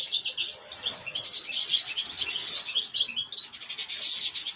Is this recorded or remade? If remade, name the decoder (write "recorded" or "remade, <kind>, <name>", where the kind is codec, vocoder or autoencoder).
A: recorded